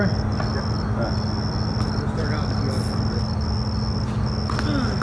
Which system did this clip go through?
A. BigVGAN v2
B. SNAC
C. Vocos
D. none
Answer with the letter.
D